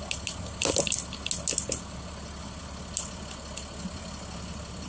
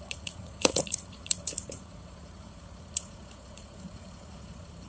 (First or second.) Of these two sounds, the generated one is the second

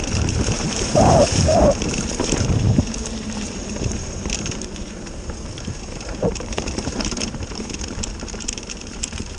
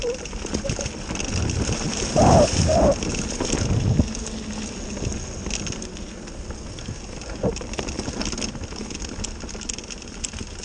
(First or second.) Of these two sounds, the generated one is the first